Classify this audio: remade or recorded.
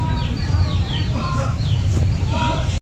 remade